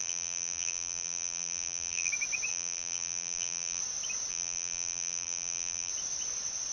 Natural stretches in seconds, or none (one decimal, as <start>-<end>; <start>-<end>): 2.1-2.5; 3.8-4.3; 5.9-6.7